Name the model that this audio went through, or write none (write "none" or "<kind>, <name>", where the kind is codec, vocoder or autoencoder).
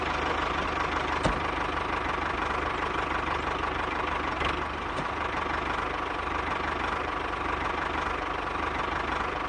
none